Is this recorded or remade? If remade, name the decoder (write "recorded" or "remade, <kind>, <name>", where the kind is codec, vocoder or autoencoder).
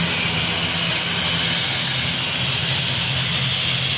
recorded